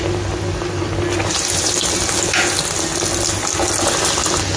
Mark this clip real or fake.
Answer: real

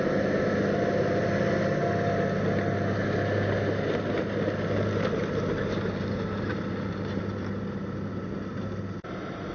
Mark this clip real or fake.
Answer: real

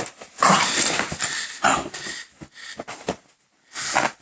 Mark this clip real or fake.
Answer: real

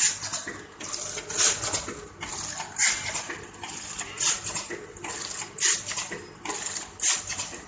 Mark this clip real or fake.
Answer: real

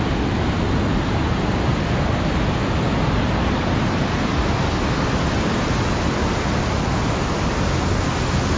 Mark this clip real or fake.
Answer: real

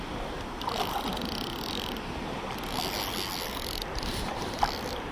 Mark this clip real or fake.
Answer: real